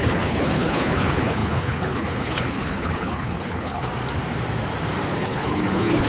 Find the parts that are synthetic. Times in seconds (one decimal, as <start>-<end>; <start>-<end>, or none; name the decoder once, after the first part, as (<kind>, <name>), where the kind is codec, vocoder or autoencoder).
0.0-3.9 (codec, HILCodec); 5.1-6.1